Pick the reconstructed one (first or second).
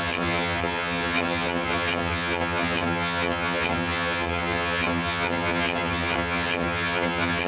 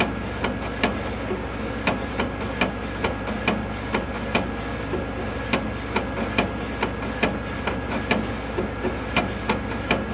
first